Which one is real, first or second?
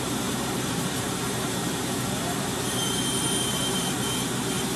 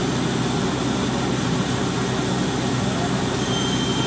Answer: second